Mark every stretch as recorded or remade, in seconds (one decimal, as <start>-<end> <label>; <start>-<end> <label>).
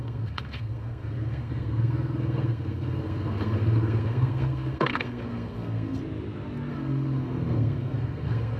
0.0-6.0 remade; 6.0-6.7 recorded; 6.7-8.6 remade